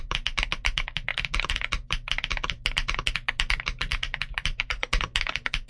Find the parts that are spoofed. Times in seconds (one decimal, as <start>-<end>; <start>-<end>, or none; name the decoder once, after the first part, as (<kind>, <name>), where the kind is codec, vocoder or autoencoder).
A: 1.1-1.6 (vocoder, BigVGAN v2); 3.9-4.8